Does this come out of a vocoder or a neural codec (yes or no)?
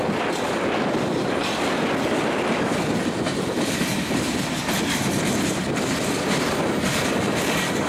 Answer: yes